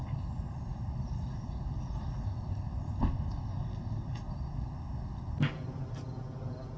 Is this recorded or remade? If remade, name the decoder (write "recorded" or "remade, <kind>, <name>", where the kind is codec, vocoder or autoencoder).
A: recorded